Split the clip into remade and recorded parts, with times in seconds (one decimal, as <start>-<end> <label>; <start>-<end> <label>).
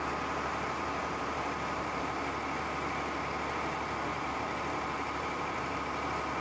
0.0-0.5 recorded; 0.5-2.0 remade; 2.0-4.1 recorded; 4.1-5.8 remade; 5.8-6.4 recorded